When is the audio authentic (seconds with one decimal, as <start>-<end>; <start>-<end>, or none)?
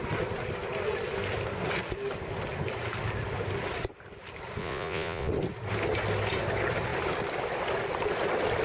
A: 0.0-4.6; 5.3-8.6